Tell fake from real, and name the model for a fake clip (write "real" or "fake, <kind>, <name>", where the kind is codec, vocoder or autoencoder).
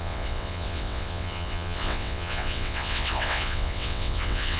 fake, vocoder, WaveNeXt